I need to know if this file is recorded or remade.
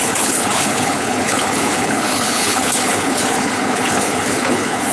remade